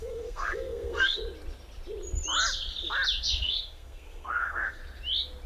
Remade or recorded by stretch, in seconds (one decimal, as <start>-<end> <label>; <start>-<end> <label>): 0.0-1.2 remade; 1.2-3.2 recorded; 3.2-4.8 remade; 4.8-5.5 recorded